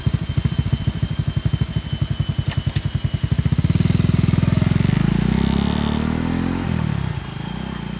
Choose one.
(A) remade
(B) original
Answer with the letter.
B